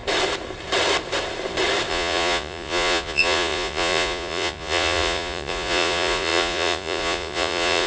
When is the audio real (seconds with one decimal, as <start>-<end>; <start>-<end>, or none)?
0.0-1.9